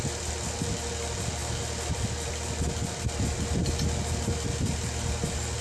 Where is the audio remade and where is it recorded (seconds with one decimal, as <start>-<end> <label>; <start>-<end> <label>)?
0.0-5.6 recorded